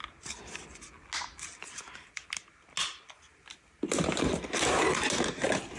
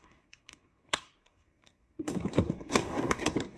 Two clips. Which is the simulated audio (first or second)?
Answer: second